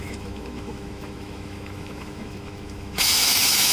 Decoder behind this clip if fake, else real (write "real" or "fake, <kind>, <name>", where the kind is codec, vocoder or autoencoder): fake, autoencoder, DAC-VAE